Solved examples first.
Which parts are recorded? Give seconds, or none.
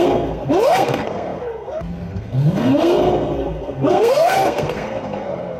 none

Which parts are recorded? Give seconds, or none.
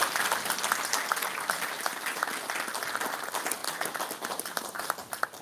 0.0-5.4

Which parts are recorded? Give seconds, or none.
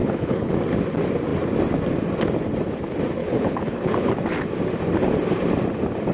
0.5-3.2; 4.1-6.1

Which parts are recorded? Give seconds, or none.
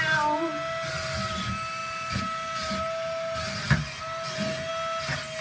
0.0-5.4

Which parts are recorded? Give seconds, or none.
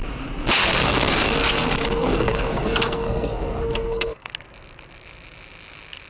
0.0-0.6; 4.3-6.1